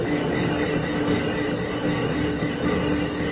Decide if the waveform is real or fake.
real